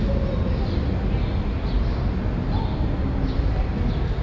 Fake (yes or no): no